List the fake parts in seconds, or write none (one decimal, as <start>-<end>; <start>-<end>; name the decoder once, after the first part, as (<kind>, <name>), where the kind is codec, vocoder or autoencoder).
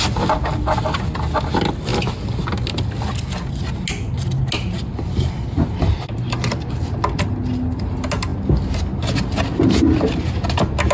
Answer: none